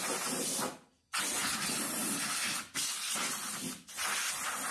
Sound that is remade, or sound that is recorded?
recorded